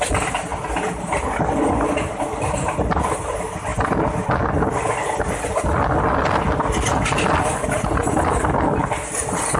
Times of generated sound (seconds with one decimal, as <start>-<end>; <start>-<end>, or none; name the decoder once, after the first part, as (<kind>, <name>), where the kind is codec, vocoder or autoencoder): none